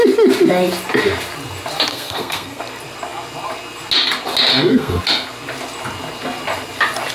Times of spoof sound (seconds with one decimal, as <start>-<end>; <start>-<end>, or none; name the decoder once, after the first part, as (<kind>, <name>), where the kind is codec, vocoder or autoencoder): 1.9-2.6 (codec, SNAC); 4.5-5.0